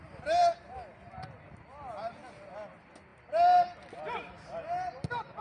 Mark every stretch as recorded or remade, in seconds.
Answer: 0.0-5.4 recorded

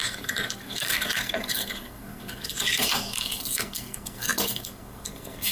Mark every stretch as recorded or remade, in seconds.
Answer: 0.0-5.5 remade

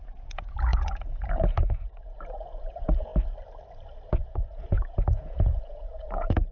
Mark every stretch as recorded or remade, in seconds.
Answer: 0.0-3.1 remade; 3.1-4.1 recorded; 4.1-6.5 remade